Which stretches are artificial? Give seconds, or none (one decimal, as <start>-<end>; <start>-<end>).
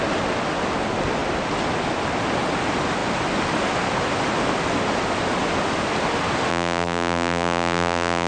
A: 6.5-8.3